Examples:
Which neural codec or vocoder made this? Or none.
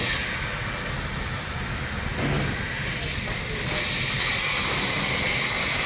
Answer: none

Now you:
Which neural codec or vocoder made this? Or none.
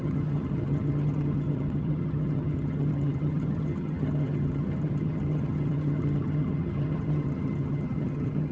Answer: vocoder, HiFi-GAN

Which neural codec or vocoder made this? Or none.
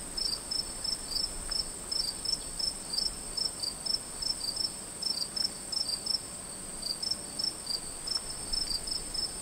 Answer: none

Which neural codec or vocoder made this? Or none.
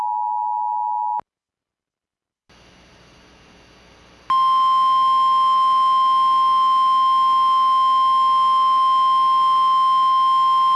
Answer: none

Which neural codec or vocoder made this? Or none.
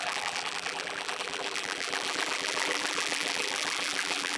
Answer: vocoder, BigVGAN v2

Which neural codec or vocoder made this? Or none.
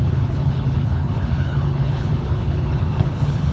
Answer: codec, HILCodec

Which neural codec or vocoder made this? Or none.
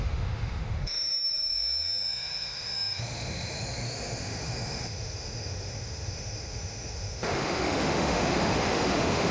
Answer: autoencoder, DAC-VAE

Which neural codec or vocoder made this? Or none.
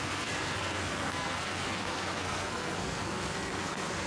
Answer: codec, SNAC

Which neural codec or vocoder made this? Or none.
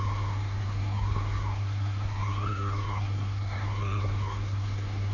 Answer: codec, SNAC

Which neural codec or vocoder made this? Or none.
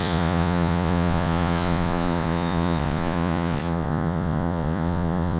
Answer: vocoder, Vocos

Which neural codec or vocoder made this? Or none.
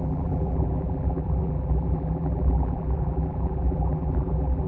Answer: vocoder, BigVGAN v2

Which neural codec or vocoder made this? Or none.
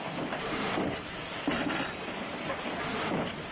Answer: none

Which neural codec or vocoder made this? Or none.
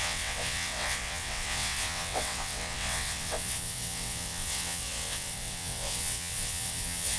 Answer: vocoder, WaveNeXt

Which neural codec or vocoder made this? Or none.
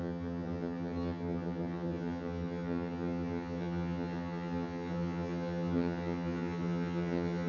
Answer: vocoder, HiFi-GAN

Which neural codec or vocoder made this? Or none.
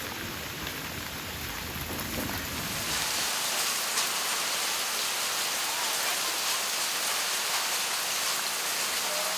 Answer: none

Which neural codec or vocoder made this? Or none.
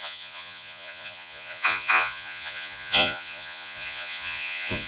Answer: vocoder, Vocos